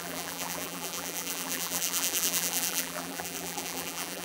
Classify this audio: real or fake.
fake